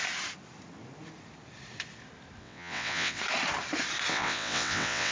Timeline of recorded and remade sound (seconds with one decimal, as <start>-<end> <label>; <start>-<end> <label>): 0.0-2.4 recorded; 2.4-3.2 remade; 3.2-4.1 recorded; 4.1-5.1 remade